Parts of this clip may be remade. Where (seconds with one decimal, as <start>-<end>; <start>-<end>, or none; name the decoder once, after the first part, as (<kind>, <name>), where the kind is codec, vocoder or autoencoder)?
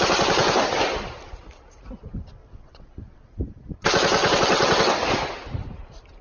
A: 2.4-3.4 (vocoder, WaveNeXt); 4.2-4.9